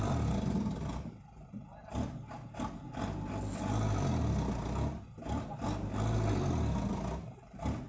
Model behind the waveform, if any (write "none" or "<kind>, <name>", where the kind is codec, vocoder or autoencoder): none